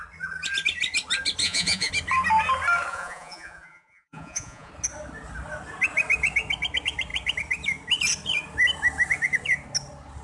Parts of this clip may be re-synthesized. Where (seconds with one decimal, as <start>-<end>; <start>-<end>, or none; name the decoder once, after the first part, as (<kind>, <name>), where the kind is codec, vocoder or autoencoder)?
1.4-1.9 (vocoder, Vocos); 2.9-4.7

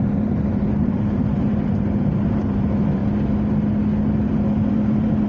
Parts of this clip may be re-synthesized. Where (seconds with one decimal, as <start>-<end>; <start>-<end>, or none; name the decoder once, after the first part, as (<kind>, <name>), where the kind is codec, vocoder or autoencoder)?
0.0-3.0 (vocoder, BigVGAN v2); 4.3-5.3

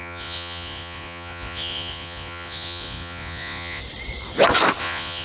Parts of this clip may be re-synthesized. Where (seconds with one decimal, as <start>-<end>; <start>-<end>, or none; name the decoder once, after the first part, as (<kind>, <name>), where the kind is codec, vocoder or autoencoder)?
0.0-3.8 (vocoder, Vocos); 4.8-5.2

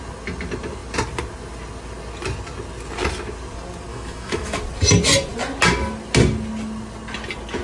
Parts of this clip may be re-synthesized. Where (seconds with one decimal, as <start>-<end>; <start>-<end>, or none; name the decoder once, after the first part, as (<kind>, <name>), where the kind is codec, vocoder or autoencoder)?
3.9-4.6 (autoencoder, DAC-VAE)

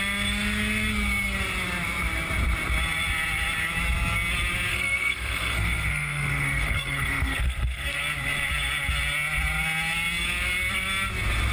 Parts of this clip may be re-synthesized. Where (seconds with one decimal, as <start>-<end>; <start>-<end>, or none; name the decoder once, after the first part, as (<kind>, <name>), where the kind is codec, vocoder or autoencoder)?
4.7-8.0 (codec, SNAC)

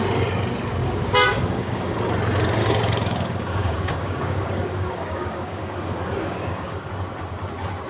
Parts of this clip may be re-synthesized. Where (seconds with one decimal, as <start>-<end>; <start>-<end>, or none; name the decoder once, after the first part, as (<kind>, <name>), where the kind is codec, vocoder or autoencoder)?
0.8-2.0 (codec, DAC); 2.6-6.9